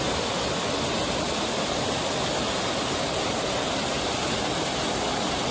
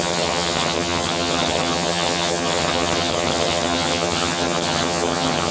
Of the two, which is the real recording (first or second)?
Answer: first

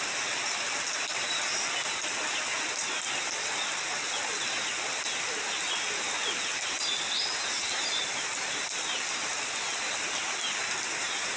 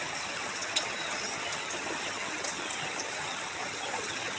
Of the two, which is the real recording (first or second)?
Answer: first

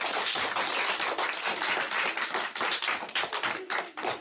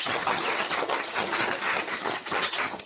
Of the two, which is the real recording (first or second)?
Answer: first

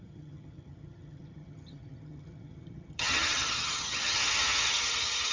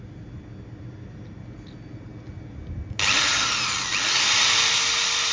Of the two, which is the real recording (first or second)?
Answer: second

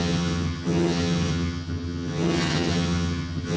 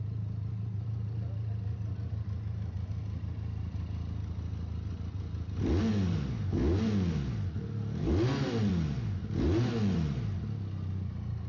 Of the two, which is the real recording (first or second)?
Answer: second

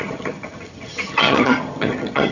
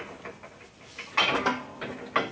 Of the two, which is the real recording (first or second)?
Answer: second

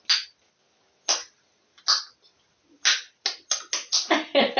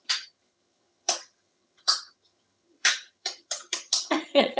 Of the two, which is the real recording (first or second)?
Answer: first